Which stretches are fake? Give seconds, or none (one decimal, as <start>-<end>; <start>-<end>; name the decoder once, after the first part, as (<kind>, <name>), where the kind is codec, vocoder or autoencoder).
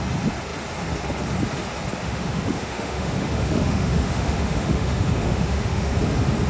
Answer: 2.0-5.9 (autoencoder, DAC-VAE)